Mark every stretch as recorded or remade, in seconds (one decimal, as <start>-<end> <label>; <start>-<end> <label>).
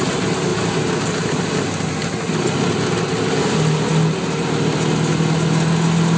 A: 0.0-6.2 recorded